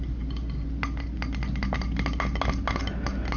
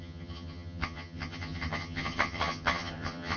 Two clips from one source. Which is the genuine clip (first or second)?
first